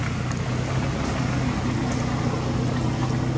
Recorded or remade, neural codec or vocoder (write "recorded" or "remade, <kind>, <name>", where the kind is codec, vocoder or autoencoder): recorded